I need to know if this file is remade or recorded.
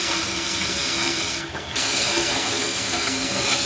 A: remade